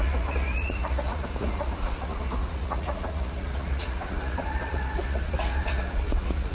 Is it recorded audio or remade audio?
remade